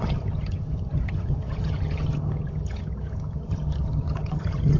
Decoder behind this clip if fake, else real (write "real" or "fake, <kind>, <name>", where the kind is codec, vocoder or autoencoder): fake, vocoder, HiFi-GAN